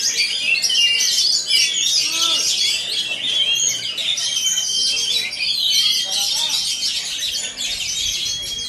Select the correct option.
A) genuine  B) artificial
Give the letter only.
A